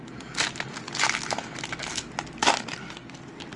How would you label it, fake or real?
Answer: real